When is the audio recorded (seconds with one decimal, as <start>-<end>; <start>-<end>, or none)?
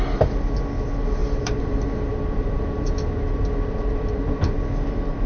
0.0-1.2; 4.4-5.3